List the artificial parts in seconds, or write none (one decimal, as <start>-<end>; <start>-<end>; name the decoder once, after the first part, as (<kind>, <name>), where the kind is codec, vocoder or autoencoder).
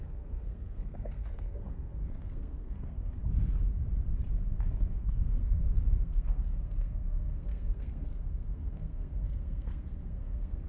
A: 0.0-3.2 (codec, SNAC); 4.7-10.7